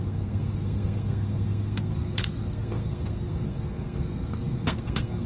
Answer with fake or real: fake